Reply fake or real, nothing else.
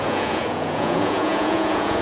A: fake